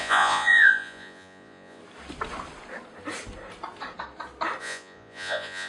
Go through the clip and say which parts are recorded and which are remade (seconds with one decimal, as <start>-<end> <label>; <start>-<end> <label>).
0.0-1.8 remade; 1.8-4.6 recorded; 4.6-5.7 remade